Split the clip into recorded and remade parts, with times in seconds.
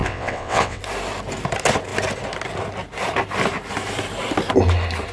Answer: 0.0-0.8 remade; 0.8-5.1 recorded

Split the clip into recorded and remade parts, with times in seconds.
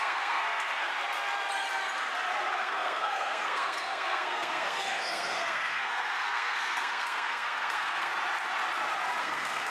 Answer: 0.0-0.9 remade; 0.9-2.5 recorded; 2.5-8.1 remade; 8.1-9.2 recorded; 9.2-9.7 remade